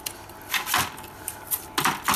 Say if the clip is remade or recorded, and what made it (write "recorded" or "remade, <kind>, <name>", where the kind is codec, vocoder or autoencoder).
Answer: recorded